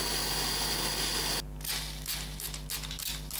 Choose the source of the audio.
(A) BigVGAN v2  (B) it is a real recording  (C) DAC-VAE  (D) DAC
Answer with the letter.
B